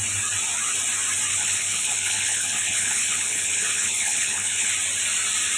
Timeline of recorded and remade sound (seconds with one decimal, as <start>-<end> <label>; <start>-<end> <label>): 0.0-1.3 recorded; 1.3-4.7 remade; 4.7-5.6 recorded